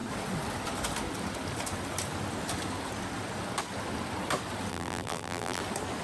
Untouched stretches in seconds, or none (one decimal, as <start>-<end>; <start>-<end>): 0.0-4.7; 5.6-6.0